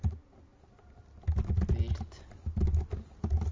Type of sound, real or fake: real